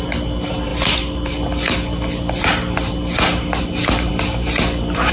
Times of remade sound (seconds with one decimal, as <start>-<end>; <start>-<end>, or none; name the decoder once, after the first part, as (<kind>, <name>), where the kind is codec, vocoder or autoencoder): none